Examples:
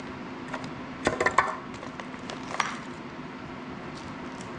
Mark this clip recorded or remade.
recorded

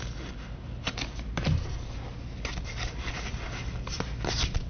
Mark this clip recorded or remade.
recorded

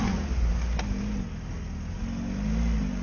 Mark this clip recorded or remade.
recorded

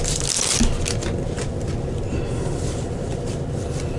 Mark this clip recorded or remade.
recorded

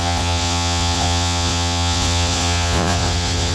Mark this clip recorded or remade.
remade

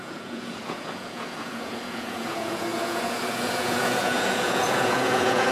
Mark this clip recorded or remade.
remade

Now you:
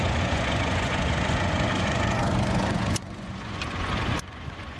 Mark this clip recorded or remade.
remade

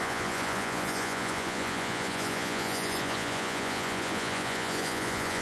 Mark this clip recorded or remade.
remade